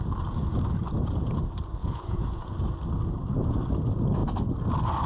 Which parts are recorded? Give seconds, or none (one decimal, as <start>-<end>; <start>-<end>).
0.0-1.8; 2.5-5.1